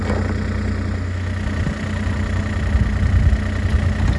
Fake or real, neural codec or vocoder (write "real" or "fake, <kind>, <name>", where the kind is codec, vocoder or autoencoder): real